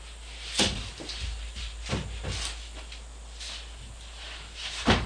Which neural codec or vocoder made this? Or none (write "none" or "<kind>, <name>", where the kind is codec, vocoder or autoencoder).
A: none